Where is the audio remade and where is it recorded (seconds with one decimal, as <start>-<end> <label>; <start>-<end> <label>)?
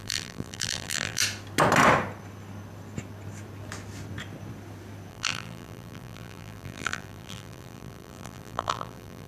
0.0-1.2 remade; 1.2-5.1 recorded; 5.1-9.3 remade